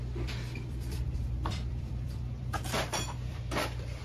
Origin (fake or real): fake